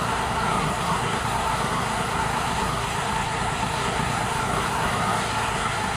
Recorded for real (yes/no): no